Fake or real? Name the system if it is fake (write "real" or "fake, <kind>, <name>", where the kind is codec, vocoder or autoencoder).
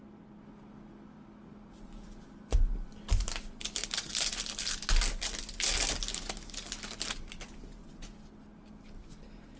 real